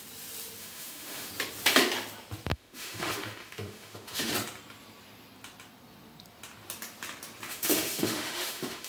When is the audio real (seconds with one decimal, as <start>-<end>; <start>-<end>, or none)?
0.0-0.6; 1.3-2.5; 4.3-7.5